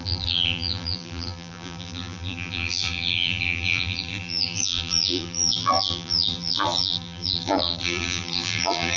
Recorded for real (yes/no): no